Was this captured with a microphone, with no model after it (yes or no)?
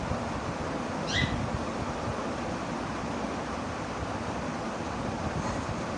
yes